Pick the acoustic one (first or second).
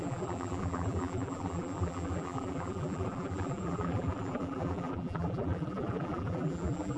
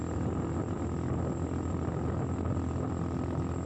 second